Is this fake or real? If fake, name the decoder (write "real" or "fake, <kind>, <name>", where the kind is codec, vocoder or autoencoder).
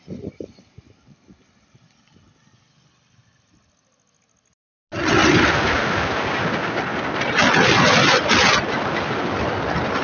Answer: real